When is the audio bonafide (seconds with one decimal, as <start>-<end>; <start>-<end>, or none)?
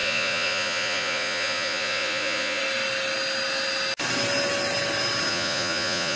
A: 2.6-5.3